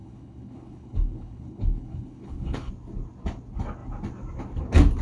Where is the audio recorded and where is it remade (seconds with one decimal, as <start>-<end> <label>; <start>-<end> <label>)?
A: 0.0-2.7 remade; 2.7-5.0 recorded